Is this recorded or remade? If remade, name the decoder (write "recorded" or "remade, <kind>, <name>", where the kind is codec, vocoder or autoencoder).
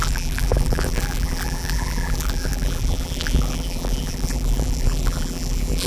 remade, vocoder, BigVGAN v2